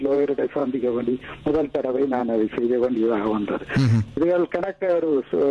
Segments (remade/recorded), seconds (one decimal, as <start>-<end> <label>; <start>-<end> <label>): 0.0-2.2 remade; 2.2-4.6 recorded; 4.6-5.5 remade